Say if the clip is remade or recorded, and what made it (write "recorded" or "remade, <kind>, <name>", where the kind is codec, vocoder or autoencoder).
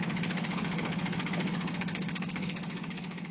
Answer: remade, codec, HILCodec